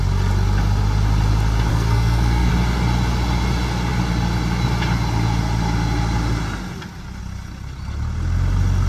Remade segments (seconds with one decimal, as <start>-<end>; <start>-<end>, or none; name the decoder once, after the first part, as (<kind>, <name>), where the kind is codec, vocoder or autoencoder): 1.7-2.5 (codec, SNAC)